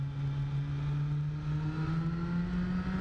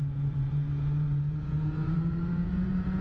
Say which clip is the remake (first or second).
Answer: second